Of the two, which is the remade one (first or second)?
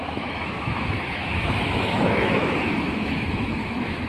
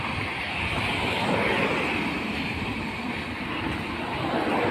first